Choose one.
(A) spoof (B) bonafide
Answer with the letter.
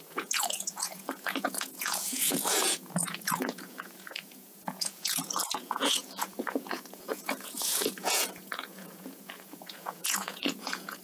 A